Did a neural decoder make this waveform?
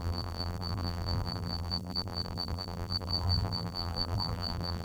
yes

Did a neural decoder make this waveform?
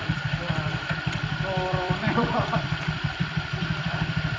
yes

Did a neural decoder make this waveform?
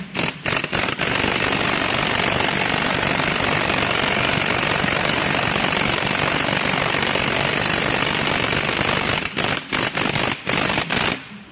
yes